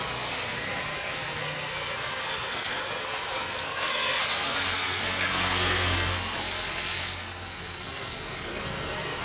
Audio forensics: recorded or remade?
remade